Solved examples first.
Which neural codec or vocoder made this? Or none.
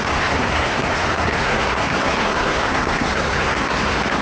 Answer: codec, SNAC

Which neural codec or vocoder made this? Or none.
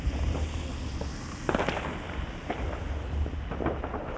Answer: none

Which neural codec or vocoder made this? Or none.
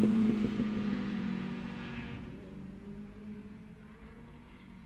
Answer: vocoder, Vocos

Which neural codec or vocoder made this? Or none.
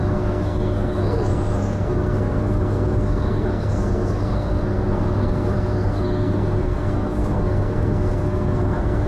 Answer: codec, SNAC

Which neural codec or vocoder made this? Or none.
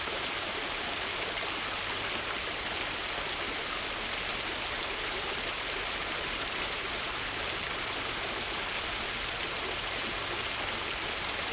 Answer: none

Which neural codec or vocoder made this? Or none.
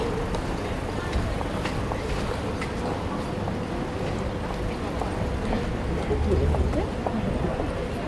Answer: none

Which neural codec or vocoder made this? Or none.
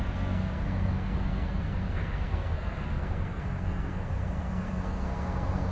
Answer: codec, SNAC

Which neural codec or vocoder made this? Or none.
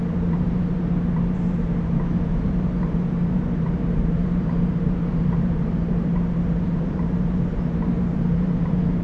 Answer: vocoder, BigVGAN v2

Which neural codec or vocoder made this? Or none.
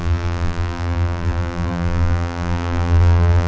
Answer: vocoder, BigVGAN v2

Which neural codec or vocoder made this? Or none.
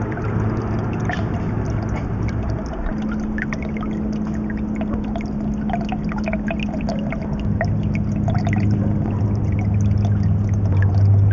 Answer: none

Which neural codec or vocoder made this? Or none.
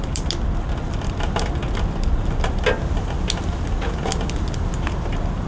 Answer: none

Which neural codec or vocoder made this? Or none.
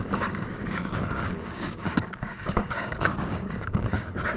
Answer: codec, DAC